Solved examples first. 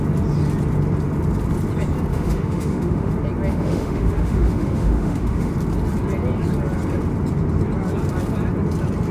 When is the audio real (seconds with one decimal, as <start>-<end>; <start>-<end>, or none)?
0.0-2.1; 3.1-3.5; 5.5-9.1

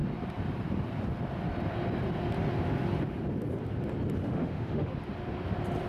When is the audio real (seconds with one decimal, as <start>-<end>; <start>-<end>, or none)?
0.0-4.2; 4.9-5.9

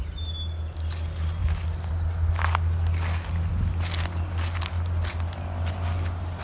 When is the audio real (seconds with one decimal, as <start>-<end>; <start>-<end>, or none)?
0.0-6.4